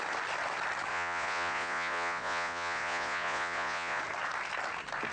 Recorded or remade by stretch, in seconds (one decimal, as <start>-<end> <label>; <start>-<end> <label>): 0.0-0.9 recorded; 0.9-4.0 remade; 4.0-5.1 recorded